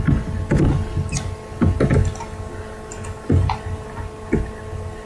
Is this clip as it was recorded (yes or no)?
yes